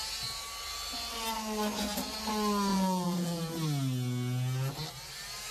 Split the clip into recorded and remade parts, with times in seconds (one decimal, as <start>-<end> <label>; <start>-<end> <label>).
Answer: 0.0-2.7 recorded; 2.7-3.4 remade; 3.4-5.5 recorded